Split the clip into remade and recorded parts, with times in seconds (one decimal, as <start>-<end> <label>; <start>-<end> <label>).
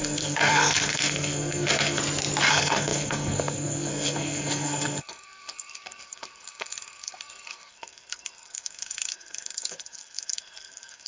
0.0-2.0 remade; 2.0-2.5 recorded; 2.5-11.1 remade